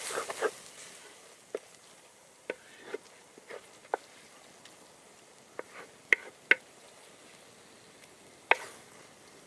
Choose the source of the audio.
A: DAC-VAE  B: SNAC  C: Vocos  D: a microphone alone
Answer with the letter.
D